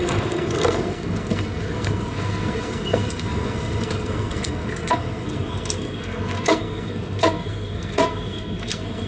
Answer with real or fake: fake